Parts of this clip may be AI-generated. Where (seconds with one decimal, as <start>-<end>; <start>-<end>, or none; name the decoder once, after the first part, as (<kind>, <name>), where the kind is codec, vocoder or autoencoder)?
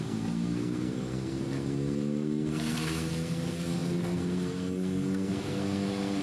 0.0-6.2 (codec, SNAC)